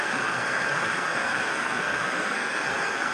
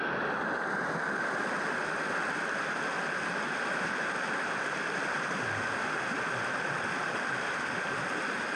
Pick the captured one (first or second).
second